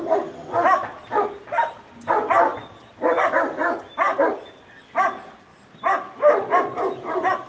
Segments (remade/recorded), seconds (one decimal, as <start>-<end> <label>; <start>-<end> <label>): 0.0-0.9 recorded; 0.9-2.1 remade; 2.1-2.5 recorded; 2.5-3.1 remade; 3.1-5.5 recorded; 5.5-6.6 remade; 6.6-7.5 recorded